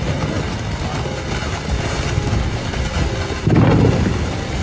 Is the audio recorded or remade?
recorded